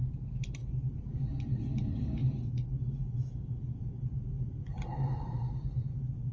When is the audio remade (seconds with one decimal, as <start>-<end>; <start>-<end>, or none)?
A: none